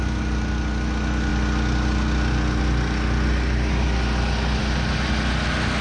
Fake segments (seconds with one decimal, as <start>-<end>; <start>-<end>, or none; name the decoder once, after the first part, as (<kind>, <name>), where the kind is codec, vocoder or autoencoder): none